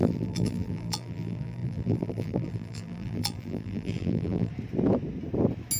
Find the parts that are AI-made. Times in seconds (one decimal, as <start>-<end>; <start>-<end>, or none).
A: 0.0-4.5